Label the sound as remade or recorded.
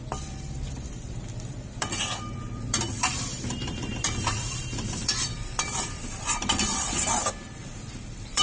remade